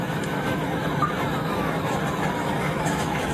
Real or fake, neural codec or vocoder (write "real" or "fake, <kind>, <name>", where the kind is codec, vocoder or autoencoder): fake, autoencoder, DAC-VAE